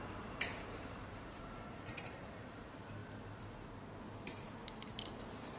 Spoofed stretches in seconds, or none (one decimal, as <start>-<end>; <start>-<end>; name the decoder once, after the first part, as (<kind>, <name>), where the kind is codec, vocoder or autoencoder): 0.0-3.0 (vocoder, BigVGAN v2); 4.0-5.6